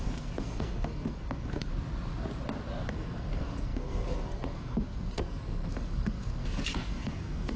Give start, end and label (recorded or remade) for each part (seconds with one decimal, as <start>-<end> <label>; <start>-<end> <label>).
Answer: 0.0-1.7 remade; 1.7-2.9 recorded; 2.9-7.6 remade